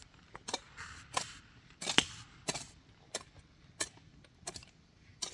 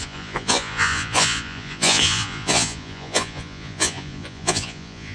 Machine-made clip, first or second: second